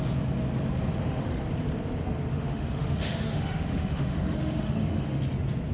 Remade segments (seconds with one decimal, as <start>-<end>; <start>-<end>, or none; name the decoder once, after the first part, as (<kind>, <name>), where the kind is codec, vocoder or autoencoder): 0.9-1.4 (autoencoder, DAC-VAE); 2.3-5.2